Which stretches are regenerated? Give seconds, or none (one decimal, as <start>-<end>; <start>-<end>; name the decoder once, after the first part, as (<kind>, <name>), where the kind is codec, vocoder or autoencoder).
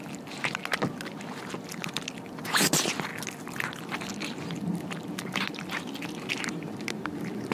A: none